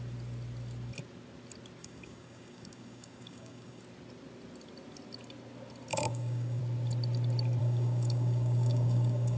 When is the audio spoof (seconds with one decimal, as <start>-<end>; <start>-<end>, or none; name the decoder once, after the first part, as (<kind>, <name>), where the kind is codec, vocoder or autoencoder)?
1.8-3.8 (codec, DAC); 5.9-6.6; 7.6-9.4